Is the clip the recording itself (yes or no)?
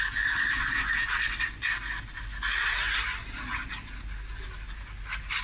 yes